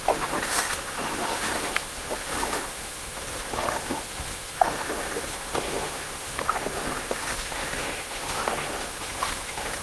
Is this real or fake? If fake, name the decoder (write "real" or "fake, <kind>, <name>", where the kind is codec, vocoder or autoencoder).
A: fake, autoencoder, DAC-VAE